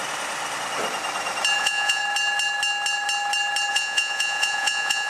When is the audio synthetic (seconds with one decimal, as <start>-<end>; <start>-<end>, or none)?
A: 1.6-2.0; 3.7-5.1